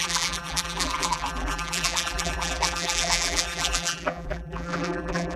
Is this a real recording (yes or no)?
no